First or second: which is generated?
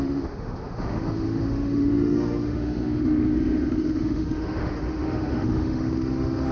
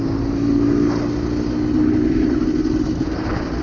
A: first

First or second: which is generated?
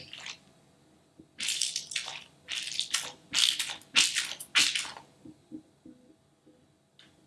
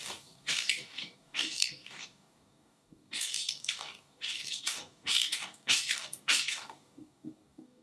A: second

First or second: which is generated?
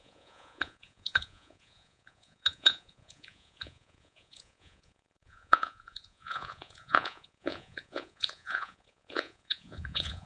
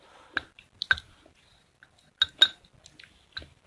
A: first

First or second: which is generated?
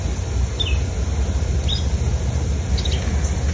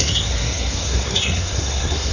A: second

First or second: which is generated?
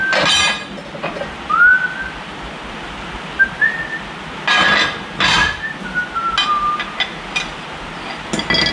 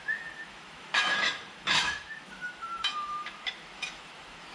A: second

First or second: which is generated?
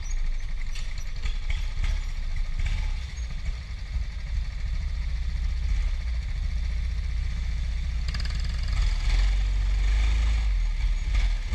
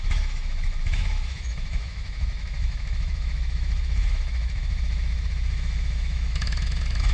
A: second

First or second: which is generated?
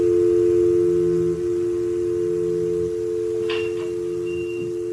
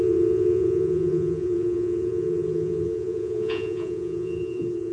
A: second